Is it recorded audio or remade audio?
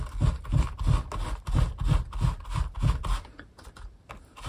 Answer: recorded